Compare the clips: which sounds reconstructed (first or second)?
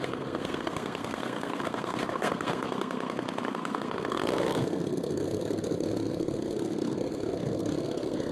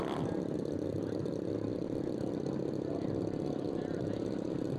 first